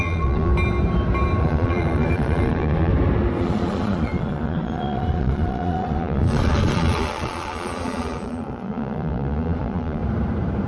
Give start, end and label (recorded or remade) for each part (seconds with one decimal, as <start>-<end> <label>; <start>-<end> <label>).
0.0-0.5 remade; 0.5-1.4 recorded; 1.4-2.9 remade; 2.9-3.4 recorded; 3.4-10.0 remade; 10.0-10.7 recorded